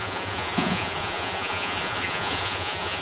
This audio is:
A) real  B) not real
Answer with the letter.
B